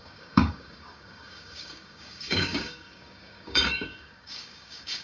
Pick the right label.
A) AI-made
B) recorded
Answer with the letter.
A